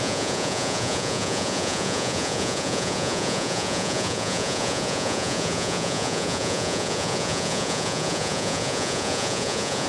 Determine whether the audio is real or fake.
fake